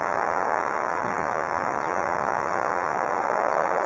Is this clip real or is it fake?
fake